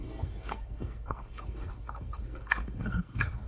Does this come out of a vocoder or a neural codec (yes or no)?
yes